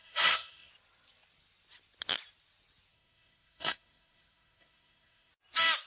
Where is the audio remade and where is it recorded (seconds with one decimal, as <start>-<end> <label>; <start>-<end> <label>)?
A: 0.0-0.7 remade; 0.7-2.9 recorded; 2.9-5.3 remade; 5.3-5.9 recorded